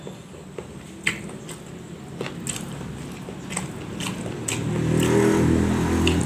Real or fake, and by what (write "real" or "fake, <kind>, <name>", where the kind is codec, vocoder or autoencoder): real